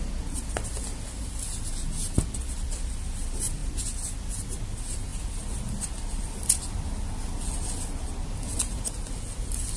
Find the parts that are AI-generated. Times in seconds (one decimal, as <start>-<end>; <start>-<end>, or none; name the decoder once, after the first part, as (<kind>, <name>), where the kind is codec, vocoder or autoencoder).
none